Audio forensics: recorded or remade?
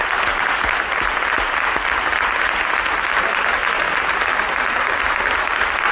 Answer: recorded